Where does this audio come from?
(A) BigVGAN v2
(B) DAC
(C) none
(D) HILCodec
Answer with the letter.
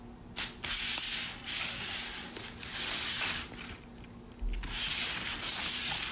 C